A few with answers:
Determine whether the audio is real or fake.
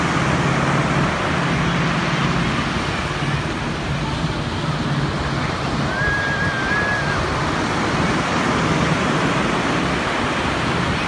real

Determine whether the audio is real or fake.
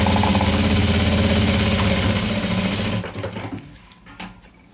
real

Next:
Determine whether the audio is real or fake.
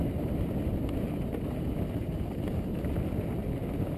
real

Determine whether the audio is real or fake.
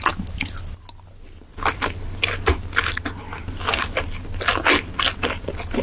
real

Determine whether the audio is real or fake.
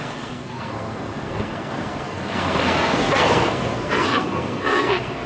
fake